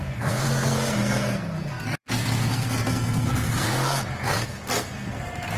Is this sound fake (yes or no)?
yes